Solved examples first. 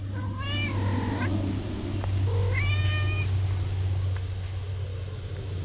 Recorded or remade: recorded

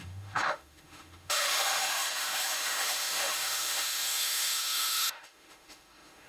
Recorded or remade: remade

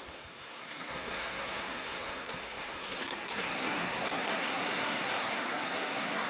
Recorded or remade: remade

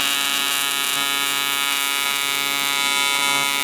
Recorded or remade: recorded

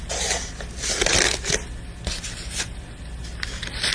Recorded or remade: recorded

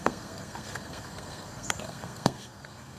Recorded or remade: remade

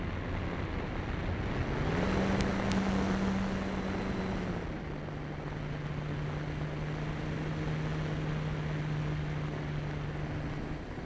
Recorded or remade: recorded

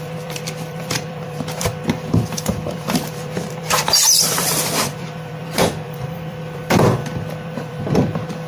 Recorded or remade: remade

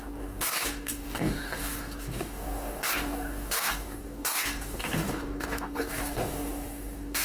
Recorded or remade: remade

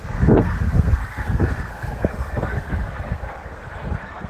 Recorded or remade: remade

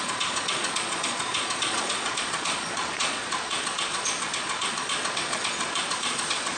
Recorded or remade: remade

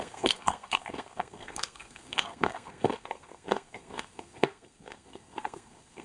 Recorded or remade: remade